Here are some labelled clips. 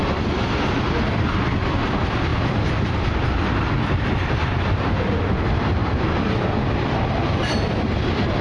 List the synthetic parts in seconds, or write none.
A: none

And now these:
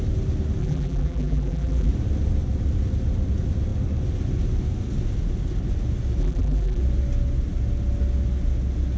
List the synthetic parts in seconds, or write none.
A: 0.6-1.9 (vocoder, BigVGAN v2); 6.2-6.8